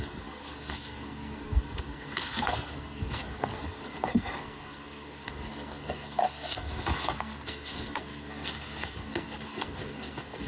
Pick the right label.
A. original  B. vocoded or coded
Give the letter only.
B